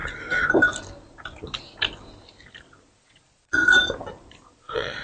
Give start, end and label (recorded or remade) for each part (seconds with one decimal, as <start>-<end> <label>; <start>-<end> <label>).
0.0-3.0 recorded; 3.0-3.6 remade; 3.6-4.6 recorded; 4.6-5.0 remade